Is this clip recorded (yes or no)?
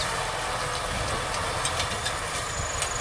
yes